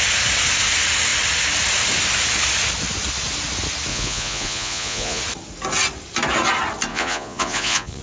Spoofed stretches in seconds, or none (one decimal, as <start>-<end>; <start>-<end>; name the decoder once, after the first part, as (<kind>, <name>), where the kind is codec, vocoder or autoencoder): 3.9-5.2 (vocoder, Vocos); 6.9-8.0